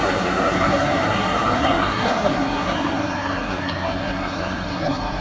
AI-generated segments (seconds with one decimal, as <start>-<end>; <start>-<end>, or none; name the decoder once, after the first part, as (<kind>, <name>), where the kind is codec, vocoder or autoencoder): 0.0-5.2 (codec, SNAC)